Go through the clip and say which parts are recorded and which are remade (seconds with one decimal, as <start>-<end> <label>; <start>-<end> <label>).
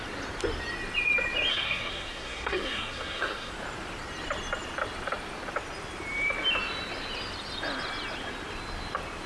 0.0-1.5 recorded; 1.5-3.5 remade; 3.5-9.3 recorded